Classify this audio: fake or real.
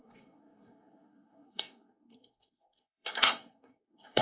fake